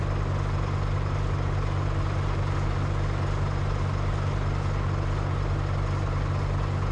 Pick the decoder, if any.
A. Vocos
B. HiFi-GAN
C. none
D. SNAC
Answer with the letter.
C